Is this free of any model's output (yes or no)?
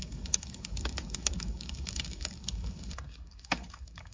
no